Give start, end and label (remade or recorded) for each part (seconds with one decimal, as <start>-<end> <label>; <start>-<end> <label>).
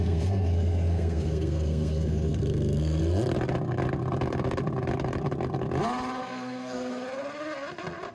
0.0-3.0 remade; 3.0-6.2 recorded; 6.2-6.9 remade; 6.9-8.1 recorded